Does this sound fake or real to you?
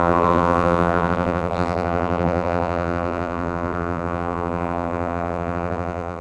fake